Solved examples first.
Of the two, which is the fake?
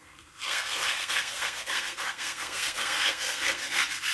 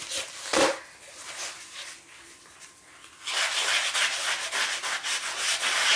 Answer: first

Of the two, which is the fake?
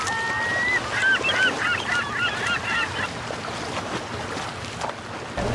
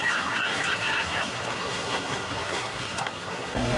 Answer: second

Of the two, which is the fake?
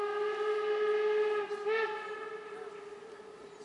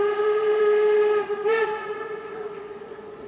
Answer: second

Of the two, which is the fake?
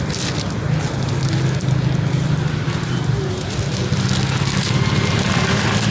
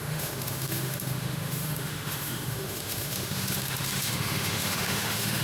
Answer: second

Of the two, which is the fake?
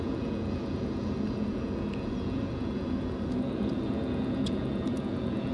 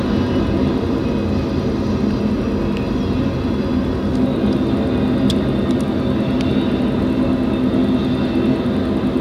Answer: first